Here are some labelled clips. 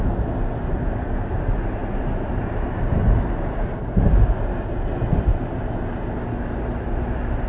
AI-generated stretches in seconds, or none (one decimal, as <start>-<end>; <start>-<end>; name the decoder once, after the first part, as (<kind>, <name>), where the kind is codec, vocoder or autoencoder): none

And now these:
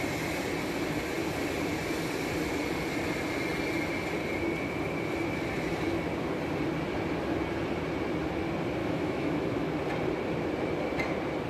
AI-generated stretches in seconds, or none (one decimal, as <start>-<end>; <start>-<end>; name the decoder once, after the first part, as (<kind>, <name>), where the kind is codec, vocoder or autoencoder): 8.8-9.7 (autoencoder, DAC-VAE)

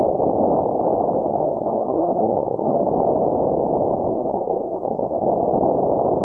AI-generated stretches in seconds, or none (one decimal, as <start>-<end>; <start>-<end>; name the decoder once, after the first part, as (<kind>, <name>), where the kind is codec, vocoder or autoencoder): 1.3-2.8 (codec, SNAC); 4.1-5.3